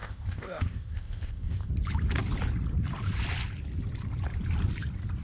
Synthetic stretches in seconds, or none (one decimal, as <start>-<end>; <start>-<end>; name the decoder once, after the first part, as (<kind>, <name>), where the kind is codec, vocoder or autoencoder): 0.0-1.7 (codec, ZipCodec)